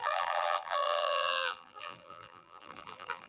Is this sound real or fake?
fake